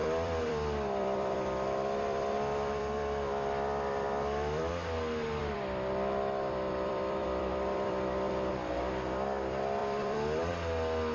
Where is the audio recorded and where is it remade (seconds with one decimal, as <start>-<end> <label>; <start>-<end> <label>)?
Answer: 0.0-4.7 remade; 4.7-5.4 recorded; 5.4-8.5 remade; 8.5-9.8 recorded; 9.8-10.5 remade; 10.5-11.1 recorded